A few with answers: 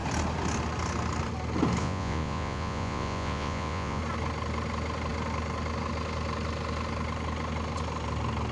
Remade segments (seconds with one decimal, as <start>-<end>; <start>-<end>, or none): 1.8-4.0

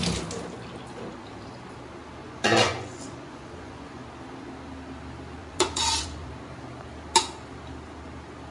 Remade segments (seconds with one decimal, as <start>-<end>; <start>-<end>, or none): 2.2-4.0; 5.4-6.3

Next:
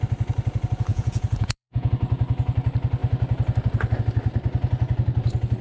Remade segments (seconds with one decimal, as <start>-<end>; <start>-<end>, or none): 0.9-1.9